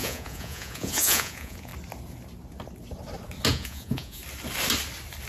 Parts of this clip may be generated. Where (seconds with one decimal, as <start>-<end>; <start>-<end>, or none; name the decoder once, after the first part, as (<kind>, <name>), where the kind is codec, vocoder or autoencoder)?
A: 0.0-1.7 (vocoder, Vocos); 3.5-4.2